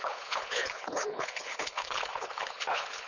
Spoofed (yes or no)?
yes